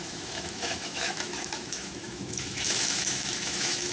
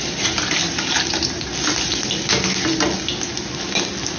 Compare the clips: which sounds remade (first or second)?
first